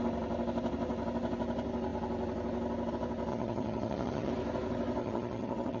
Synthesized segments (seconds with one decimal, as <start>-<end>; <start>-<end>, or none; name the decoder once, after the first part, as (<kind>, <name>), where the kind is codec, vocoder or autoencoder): 3.3-4.3 (vocoder, HiFi-GAN); 5.0-5.8